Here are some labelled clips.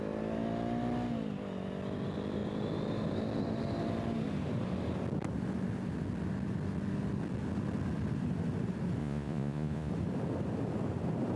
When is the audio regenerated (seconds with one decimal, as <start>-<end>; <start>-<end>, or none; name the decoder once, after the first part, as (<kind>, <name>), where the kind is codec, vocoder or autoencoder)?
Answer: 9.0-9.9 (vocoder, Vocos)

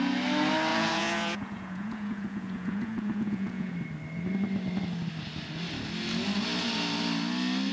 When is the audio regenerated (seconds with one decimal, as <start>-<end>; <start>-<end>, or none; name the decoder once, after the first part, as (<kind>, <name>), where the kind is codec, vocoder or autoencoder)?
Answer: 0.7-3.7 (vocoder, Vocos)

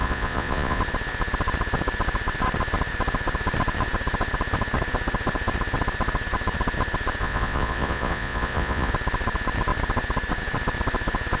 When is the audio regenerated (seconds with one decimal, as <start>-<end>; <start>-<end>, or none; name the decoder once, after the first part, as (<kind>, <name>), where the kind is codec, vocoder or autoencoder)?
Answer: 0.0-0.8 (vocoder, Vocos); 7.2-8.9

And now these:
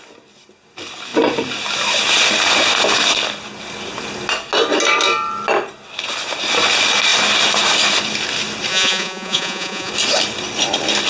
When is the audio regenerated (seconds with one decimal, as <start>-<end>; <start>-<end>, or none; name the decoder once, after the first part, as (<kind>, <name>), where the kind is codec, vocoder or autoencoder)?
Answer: 8.7-9.9 (vocoder, Vocos)

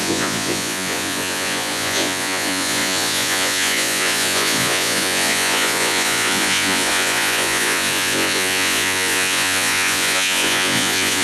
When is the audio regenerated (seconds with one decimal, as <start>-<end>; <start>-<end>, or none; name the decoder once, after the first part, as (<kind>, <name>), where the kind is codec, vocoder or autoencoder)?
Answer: 0.0-11.2 (vocoder, Vocos)

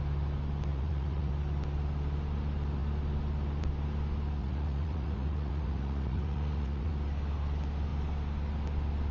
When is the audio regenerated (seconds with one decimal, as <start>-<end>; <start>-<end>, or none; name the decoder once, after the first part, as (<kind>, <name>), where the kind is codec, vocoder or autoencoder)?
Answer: 0.7-1.3 (vocoder, Vocos); 4.4-6.9